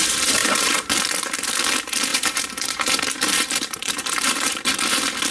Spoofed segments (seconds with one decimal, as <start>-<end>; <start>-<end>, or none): 0.4-0.9; 2.1-4.7